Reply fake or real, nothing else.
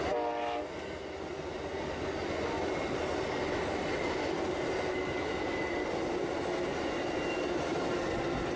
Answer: real